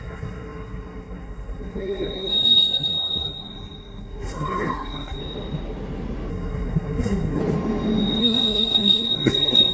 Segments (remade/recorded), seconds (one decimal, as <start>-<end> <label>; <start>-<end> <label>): 0.0-5.2 remade; 5.2-6.3 recorded; 6.3-7.4 remade; 7.4-8.2 recorded; 8.2-9.7 remade